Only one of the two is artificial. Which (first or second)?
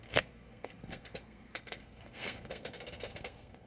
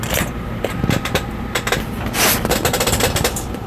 first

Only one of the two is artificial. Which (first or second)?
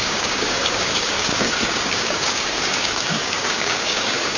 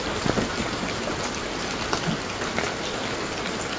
first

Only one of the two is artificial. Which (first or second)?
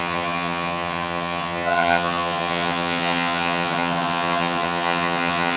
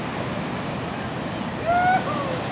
first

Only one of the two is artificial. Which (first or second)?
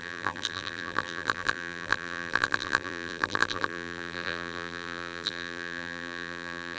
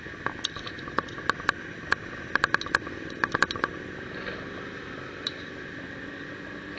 first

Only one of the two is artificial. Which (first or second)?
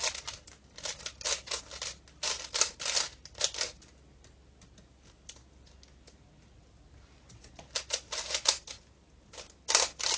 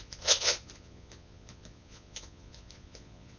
second